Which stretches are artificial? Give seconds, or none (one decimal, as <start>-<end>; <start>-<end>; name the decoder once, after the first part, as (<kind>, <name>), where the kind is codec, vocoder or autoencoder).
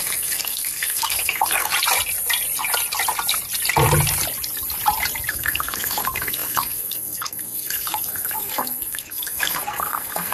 0.0-1.7 (codec, SNAC); 5.3-10.3